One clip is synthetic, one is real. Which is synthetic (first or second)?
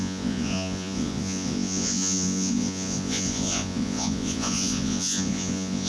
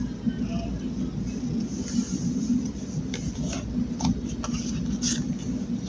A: first